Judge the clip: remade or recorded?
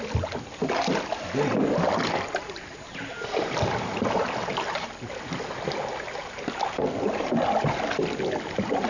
recorded